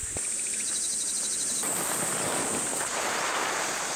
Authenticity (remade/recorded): recorded